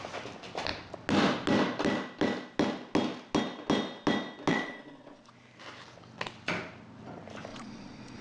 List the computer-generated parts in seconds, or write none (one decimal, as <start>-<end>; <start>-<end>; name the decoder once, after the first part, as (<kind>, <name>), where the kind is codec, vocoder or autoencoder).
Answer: 4.5-5.3 (vocoder, Vocos); 7.5-8.2